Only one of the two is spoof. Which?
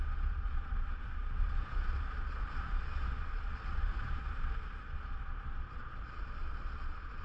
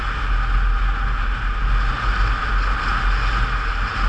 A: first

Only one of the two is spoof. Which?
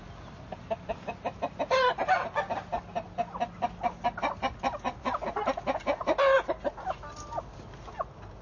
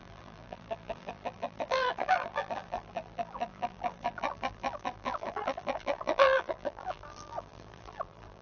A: second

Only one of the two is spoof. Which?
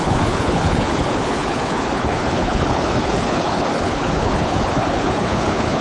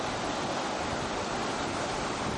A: first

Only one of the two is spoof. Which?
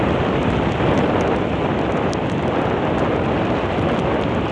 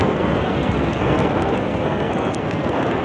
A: second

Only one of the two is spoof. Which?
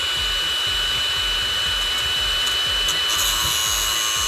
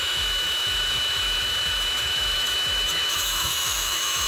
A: second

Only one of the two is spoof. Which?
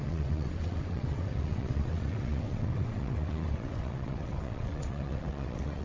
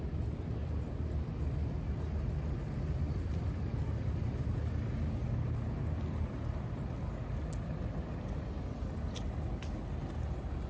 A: first